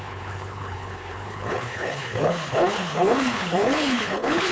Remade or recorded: remade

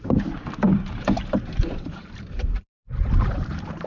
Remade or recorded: remade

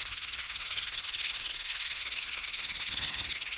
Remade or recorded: remade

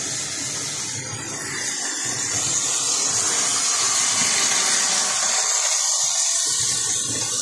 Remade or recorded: recorded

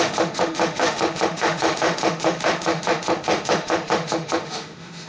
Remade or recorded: remade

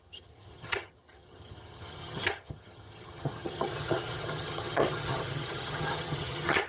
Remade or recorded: remade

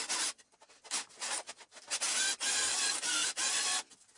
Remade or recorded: recorded